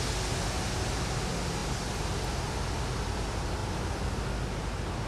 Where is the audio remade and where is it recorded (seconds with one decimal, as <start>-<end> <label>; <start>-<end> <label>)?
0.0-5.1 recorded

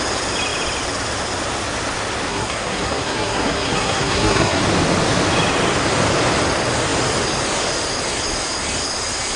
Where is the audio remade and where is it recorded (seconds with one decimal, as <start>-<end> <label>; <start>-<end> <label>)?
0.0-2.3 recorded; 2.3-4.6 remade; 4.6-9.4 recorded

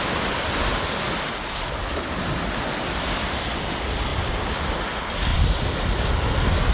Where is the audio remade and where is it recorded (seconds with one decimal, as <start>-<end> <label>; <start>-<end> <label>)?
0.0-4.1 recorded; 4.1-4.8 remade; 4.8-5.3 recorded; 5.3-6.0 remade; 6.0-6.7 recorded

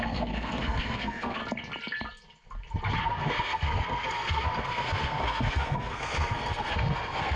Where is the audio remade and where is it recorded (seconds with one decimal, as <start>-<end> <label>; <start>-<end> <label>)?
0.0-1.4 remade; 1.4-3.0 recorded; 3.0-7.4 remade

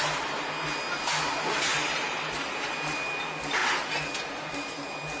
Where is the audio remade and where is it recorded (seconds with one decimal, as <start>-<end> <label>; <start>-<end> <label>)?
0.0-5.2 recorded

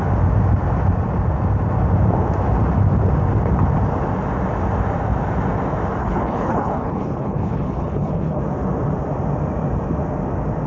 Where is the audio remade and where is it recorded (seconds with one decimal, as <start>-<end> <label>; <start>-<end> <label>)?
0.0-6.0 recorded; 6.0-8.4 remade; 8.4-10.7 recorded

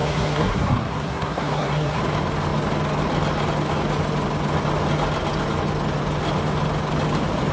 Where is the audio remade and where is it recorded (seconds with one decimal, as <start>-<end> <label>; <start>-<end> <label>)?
0.0-2.0 remade; 2.0-7.5 recorded